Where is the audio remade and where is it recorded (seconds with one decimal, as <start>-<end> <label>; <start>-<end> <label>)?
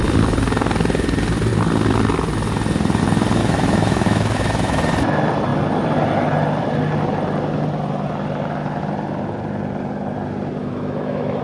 0.0-3.4 recorded; 3.4-4.8 remade; 4.8-10.6 recorded; 10.6-11.4 remade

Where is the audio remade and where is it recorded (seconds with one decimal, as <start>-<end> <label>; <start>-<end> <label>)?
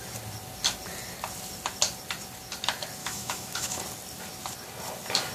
0.0-3.0 recorded; 3.0-3.8 remade; 3.8-5.3 recorded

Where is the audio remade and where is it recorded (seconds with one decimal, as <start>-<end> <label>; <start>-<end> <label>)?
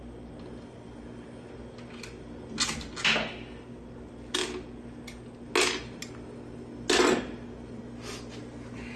0.0-9.0 recorded